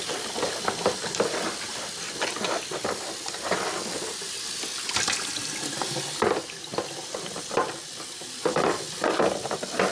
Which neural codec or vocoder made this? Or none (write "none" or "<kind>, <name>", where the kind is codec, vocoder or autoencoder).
none